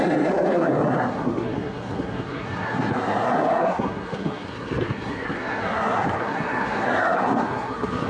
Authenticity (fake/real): fake